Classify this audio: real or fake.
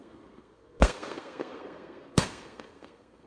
fake